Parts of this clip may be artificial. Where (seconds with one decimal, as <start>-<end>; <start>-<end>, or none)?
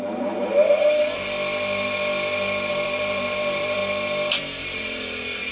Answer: 0.0-0.5; 2.7-3.8; 4.6-5.5